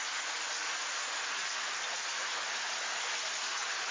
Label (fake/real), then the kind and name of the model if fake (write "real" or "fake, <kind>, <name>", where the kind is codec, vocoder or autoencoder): real